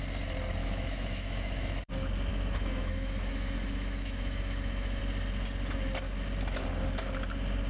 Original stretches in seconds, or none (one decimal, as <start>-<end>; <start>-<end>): 0.0-0.6; 1.9-2.3; 5.0-7.7